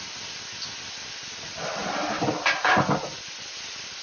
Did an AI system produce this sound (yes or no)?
no